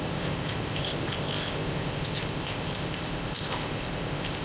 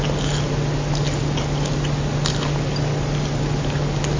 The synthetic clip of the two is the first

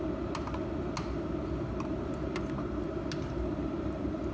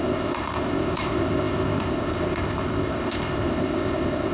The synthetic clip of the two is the second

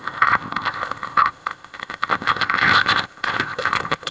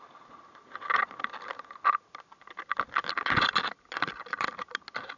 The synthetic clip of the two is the first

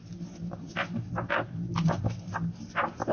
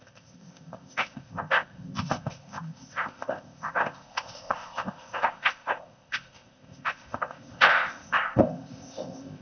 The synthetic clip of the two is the second